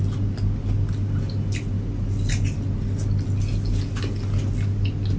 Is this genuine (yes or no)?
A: yes